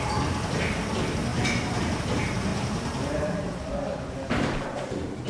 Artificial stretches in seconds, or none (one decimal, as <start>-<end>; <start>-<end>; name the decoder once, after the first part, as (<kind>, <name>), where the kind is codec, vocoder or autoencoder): 1.3-2.0 (vocoder, BigVGAN v2); 2.5-3.7